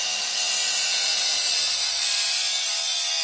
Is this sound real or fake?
real